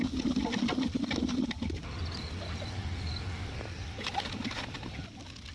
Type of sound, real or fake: real